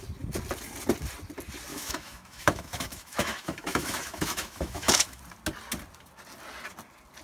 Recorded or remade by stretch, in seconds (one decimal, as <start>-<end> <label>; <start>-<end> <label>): 0.0-1.7 recorded; 1.7-5.2 remade; 5.2-7.2 recorded